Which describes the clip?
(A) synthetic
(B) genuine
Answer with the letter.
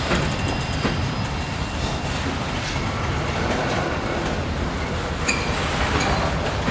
B